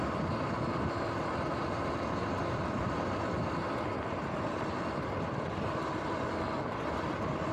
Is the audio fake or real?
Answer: real